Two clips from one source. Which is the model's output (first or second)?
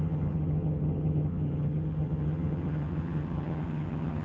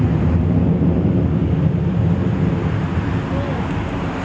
first